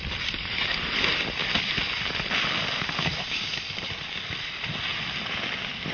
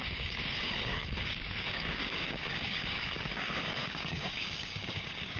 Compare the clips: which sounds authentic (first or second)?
first